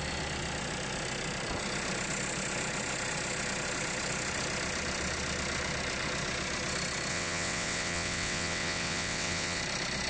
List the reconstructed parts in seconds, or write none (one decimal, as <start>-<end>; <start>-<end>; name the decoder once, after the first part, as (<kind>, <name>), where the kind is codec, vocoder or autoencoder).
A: 7.1-9.6 (vocoder, WaveNeXt)